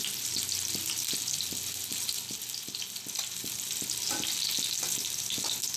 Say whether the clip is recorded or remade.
recorded